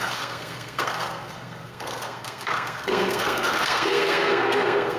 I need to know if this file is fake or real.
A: fake